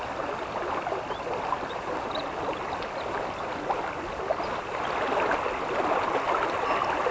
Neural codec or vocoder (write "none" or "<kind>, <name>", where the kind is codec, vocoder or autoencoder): none